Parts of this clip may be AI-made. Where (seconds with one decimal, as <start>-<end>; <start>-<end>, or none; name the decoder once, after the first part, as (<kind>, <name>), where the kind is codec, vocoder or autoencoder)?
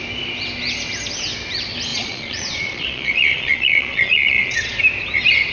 1.9-4.8 (vocoder, Vocos)